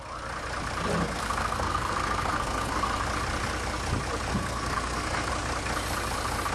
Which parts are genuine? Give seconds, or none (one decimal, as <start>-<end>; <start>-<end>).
0.0-1.0; 2.9-4.3; 5.3-6.5